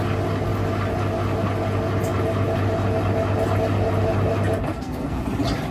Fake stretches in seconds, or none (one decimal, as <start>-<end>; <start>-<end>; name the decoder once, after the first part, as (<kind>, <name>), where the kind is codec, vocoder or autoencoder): 4.7-5.2 (codec, SNAC)